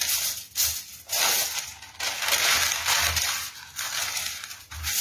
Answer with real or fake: real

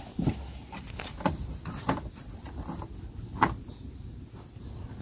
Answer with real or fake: real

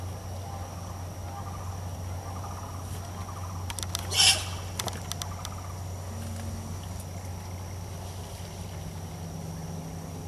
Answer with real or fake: real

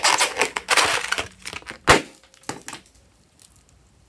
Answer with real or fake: real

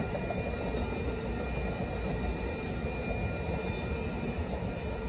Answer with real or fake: real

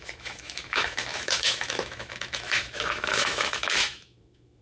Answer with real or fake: fake